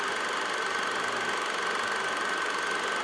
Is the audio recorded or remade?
recorded